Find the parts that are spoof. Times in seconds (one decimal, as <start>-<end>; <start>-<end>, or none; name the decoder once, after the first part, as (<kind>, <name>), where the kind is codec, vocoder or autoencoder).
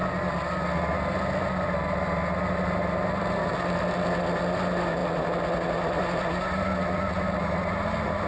none